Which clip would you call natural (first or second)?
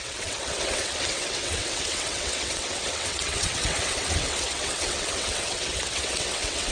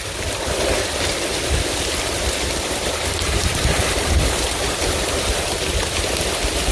second